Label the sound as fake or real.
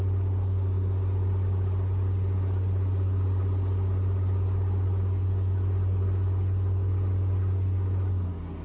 real